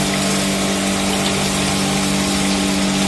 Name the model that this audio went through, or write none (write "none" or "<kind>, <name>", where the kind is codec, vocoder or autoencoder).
none